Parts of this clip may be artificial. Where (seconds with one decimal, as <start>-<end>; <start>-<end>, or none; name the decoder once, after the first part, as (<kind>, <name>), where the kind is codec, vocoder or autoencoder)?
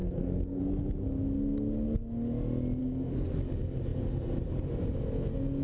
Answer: 0.0-0.6 (codec, SNAC); 2.8-3.4